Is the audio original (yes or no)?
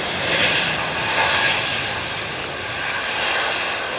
yes